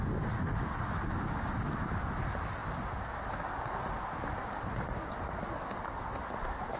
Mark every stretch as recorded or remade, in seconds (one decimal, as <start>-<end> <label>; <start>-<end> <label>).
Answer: 0.0-6.8 recorded